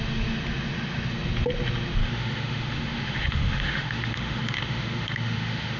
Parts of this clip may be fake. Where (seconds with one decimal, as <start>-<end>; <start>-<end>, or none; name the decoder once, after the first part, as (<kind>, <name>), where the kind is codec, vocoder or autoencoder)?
2.0-5.8 (autoencoder, DAC-VAE)